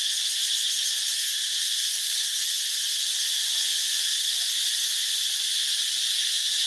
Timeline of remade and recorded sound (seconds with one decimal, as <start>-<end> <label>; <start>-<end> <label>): 0.0-1.1 recorded; 1.1-2.4 remade; 2.4-6.7 recorded